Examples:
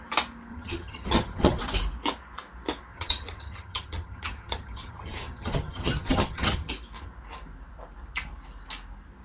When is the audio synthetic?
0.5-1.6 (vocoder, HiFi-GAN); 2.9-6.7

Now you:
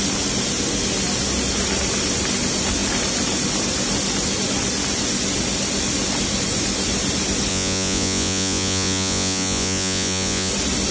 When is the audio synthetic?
7.5-10.5 (vocoder, Vocos)

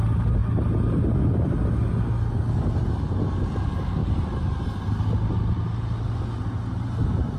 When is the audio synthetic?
none

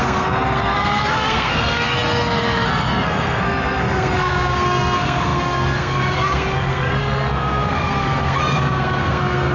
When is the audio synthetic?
0.0-9.5 (codec, SNAC)

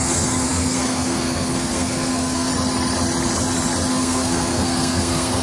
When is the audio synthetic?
0.0-2.5 (codec, SNAC); 3.9-5.4

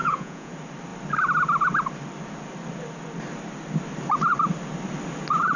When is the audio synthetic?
0.0-0.5 (vocoder, Vocos)

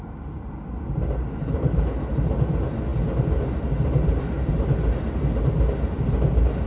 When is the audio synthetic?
none

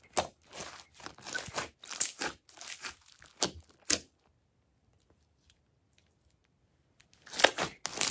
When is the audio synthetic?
none